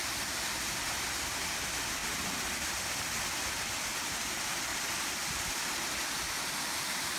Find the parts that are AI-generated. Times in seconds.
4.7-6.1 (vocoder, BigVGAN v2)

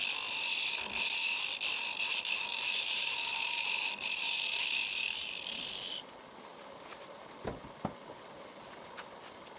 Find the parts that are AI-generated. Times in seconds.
2.5-3.6 (vocoder, BigVGAN v2); 6.5-7.4

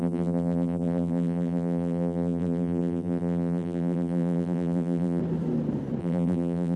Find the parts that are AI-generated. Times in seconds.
0.0-5.2 (vocoder, BigVGAN v2); 6.0-6.8

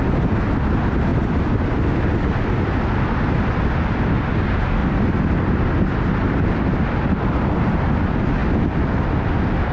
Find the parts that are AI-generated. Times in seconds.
1.1-1.6 (vocoder, BigVGAN v2); 4.8-6.6

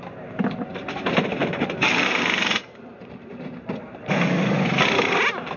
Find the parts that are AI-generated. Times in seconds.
0.7-4.1 (vocoder, BigVGAN v2)

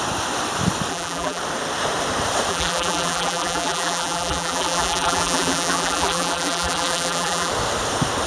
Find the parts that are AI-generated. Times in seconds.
0.9-1.4 (vocoder, BigVGAN v2); 2.5-7.5